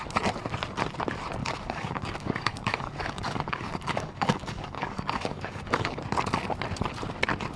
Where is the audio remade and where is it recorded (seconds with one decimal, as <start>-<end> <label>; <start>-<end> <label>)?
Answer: 0.0-1.4 recorded; 1.4-6.0 remade; 6.0-7.6 recorded